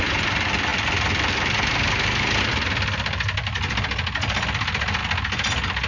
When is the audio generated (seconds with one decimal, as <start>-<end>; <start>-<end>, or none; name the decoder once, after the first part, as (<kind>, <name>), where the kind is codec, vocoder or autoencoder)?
none